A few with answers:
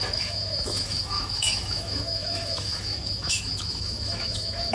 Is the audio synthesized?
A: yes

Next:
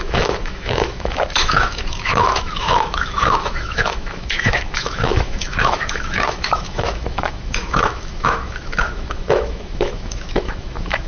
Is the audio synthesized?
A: yes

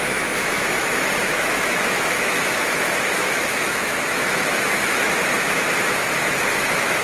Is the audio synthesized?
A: yes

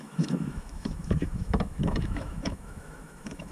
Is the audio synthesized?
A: yes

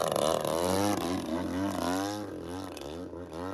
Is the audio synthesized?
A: no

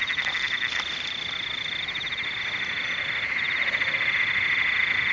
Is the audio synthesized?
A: no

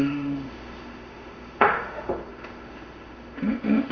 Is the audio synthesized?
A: yes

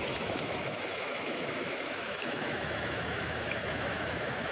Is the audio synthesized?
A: yes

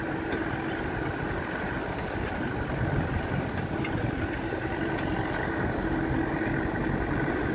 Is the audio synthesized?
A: no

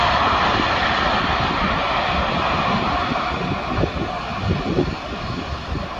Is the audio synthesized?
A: no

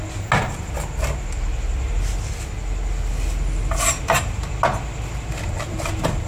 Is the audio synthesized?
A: no